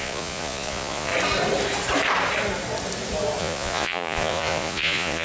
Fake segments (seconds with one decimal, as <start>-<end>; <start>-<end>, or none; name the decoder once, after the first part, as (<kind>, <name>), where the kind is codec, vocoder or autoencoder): 0.0-1.1 (vocoder, Vocos); 3.4-5.2